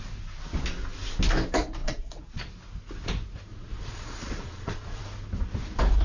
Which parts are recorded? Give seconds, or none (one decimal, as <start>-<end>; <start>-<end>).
0.0-1.8; 2.4-3.5; 5.0-6.0